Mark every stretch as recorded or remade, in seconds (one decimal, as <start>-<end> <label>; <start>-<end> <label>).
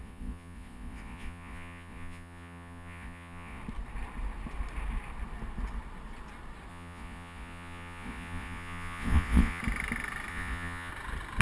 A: 0.0-3.6 remade; 3.6-6.7 recorded; 6.7-9.6 remade; 9.6-10.3 recorded; 10.3-10.9 remade; 10.9-11.4 recorded